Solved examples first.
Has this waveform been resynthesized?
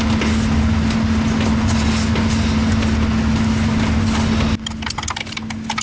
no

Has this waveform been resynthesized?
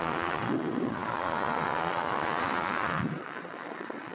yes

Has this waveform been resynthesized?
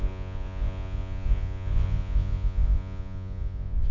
yes